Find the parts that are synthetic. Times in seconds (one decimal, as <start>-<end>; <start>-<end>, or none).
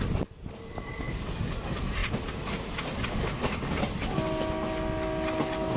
none